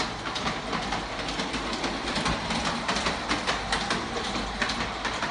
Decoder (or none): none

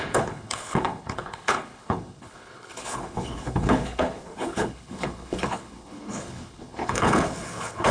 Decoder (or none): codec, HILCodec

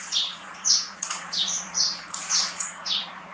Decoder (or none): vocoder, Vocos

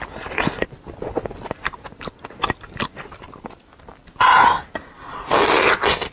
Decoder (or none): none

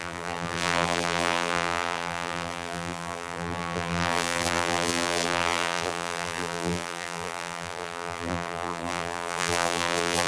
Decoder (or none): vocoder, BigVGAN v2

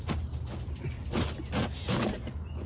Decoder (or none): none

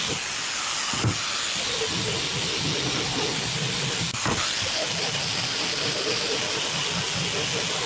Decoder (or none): none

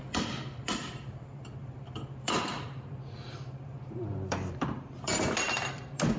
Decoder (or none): vocoder, BigVGAN v2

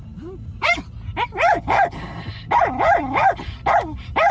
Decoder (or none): none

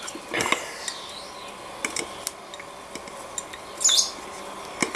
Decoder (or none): none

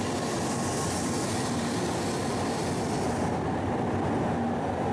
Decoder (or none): none